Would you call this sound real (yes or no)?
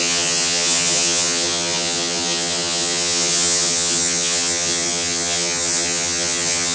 no